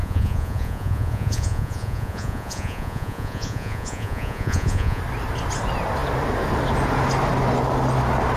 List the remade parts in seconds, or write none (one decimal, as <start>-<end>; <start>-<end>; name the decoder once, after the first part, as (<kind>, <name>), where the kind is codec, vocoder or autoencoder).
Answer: 0.0-5.0 (vocoder, Vocos)